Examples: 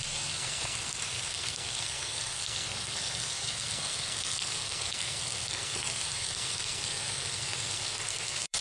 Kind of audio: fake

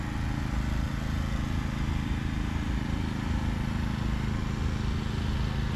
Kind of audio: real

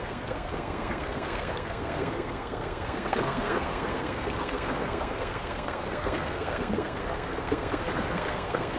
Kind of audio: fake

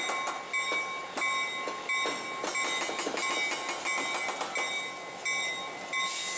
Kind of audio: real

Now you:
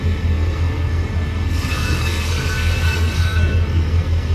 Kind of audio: fake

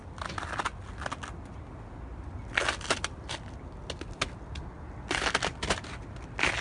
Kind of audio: real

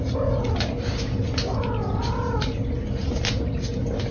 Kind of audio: real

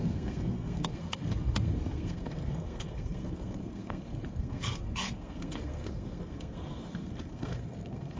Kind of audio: fake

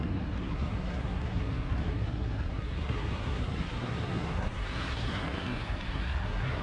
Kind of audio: fake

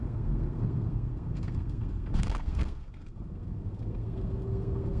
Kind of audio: fake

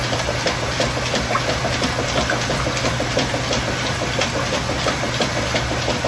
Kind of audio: real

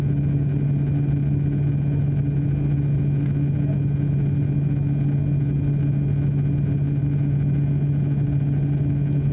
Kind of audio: real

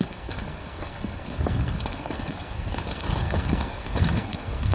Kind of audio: fake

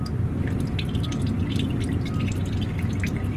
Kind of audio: real